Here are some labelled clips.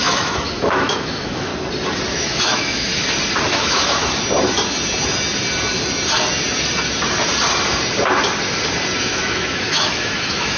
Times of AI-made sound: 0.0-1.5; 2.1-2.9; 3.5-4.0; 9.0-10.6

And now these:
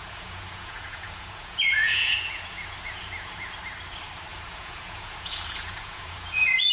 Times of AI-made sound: 0.0-3.5; 4.3-6.7

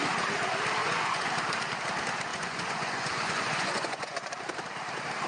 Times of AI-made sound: 0.8-1.3; 2.3-4.3

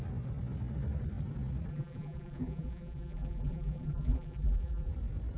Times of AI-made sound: 1.7-4.9

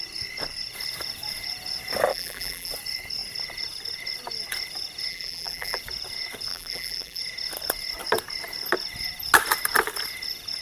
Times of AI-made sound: 2.1-2.7; 5.1-5.8; 6.5-7.2

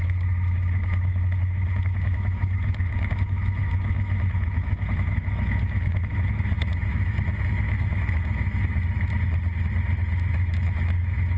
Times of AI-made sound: 0.0-8.7; 10.3-11.4